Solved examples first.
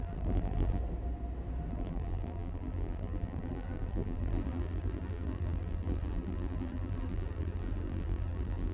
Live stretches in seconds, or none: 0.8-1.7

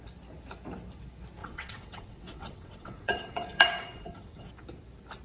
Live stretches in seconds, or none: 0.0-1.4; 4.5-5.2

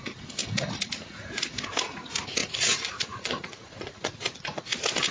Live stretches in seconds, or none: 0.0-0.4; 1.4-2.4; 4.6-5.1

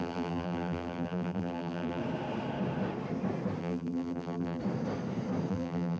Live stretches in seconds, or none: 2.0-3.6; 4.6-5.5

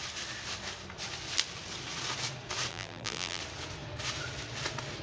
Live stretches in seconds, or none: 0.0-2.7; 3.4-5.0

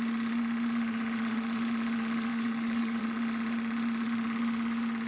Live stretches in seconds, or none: 0.0-2.3; 3.0-5.1

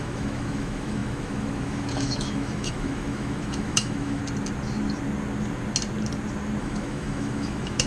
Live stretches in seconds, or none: 4.2-6.6

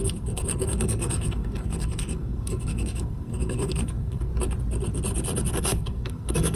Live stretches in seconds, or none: 4.3-5.5